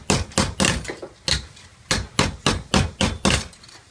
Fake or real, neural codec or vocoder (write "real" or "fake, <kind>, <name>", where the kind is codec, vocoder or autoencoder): real